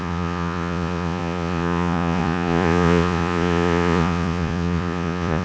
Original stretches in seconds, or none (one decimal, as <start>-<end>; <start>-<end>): none